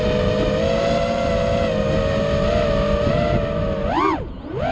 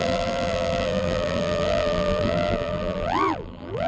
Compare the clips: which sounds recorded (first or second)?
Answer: first